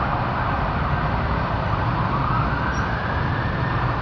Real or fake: real